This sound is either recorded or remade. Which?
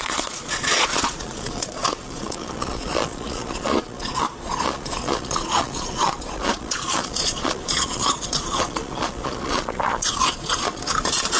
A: remade